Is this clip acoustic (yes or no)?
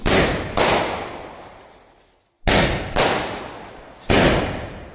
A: yes